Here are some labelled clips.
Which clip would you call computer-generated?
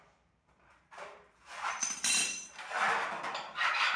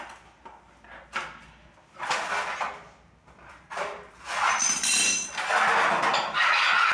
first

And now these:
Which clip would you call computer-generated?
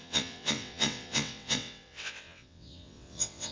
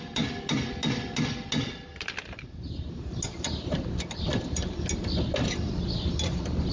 first